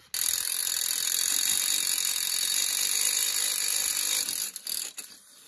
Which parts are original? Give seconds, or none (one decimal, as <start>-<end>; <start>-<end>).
0.0-5.5